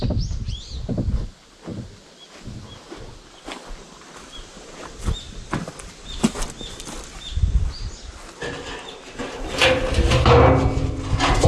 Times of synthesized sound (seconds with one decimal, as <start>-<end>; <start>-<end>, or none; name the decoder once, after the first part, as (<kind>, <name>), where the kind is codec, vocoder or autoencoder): none